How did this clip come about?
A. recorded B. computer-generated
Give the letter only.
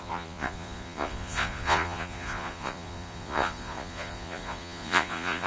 B